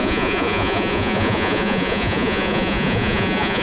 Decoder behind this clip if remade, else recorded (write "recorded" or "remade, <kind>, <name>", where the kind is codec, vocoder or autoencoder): remade, vocoder, Vocos